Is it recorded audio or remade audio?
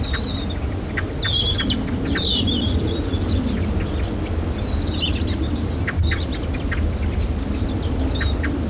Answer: recorded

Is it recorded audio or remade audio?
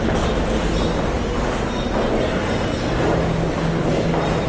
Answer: recorded